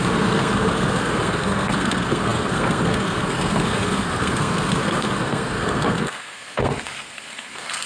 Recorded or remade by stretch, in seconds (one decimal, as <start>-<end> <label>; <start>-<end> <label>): 0.0-7.9 remade